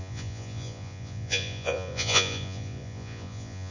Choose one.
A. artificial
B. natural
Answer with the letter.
A